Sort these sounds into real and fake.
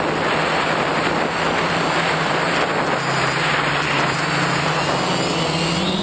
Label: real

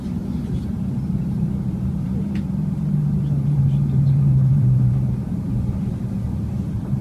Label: fake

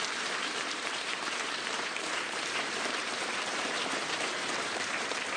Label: fake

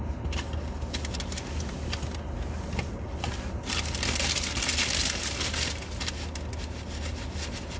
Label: real